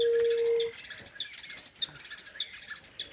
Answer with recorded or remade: recorded